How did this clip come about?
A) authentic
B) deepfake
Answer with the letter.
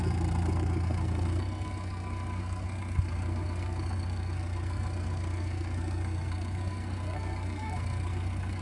B